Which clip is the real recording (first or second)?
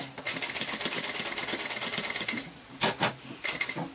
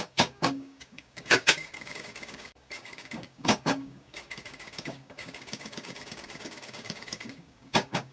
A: first